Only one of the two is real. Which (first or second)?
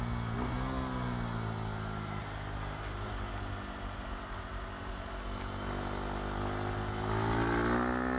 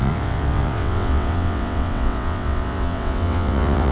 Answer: first